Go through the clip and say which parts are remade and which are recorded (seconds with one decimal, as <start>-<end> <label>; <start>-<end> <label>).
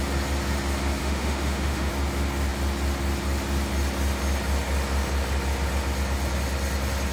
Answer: 0.0-1.0 recorded; 1.0-1.9 remade; 1.9-7.1 recorded